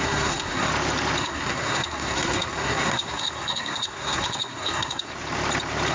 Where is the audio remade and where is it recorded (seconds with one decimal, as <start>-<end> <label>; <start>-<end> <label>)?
0.0-0.7 remade; 0.7-1.2 recorded; 1.2-5.1 remade; 5.1-5.9 recorded